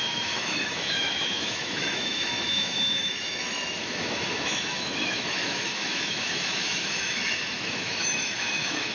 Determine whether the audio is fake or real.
fake